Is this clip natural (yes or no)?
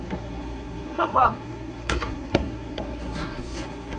no